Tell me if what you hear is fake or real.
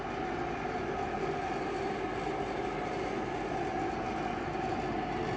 real